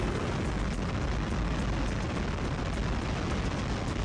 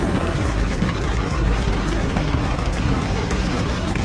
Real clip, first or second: first